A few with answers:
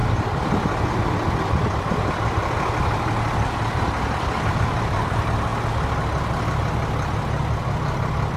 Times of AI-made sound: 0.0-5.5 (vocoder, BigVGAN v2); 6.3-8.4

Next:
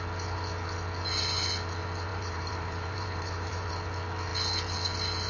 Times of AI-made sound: 2.1-3.7 (vocoder, BigVGAN v2)

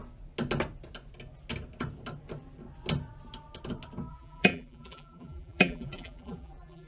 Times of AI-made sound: 4.1-6.9 (vocoder, BigVGAN v2)

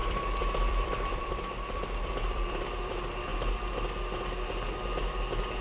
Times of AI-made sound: 0.0-3.3 (vocoder, BigVGAN v2)